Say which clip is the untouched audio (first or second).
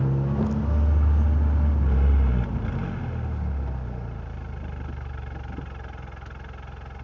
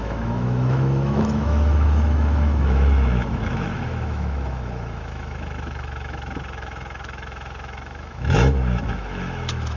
first